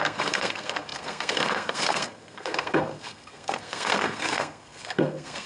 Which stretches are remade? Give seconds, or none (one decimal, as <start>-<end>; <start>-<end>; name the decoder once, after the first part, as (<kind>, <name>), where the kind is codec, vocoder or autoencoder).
0.0-5.5 (codec, SNAC)